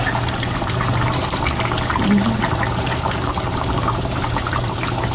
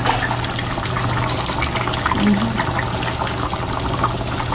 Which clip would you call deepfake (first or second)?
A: first